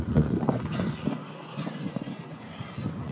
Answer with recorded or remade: remade